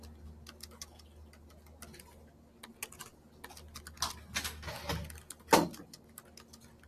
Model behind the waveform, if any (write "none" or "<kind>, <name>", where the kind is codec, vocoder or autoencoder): none